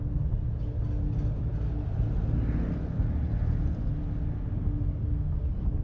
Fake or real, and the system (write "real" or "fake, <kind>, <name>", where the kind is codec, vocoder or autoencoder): real